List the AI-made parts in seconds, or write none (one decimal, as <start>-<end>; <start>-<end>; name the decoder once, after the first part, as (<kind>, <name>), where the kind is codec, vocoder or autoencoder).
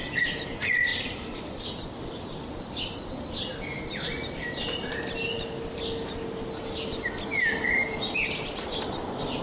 none